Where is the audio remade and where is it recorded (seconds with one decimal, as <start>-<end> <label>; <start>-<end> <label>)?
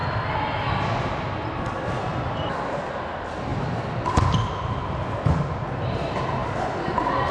0.0-7.3 recorded